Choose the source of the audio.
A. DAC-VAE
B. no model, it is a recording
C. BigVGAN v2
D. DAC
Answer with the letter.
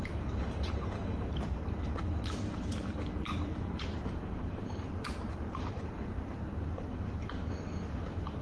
C